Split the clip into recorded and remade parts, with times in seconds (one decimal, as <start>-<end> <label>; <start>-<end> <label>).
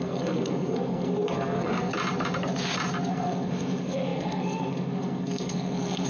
0.0-1.9 remade; 1.9-3.1 recorded; 3.1-6.1 remade